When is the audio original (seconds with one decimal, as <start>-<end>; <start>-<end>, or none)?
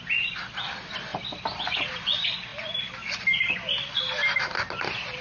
0.0-5.2